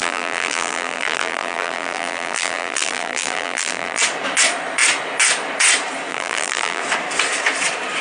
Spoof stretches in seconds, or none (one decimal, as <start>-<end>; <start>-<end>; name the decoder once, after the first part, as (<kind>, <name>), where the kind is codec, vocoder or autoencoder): 0.0-4.0 (vocoder, BigVGAN v2); 6.1-6.8